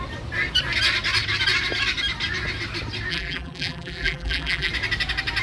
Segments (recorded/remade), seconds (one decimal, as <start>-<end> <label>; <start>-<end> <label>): 0.0-3.1 recorded; 3.1-4.7 remade; 4.7-5.4 recorded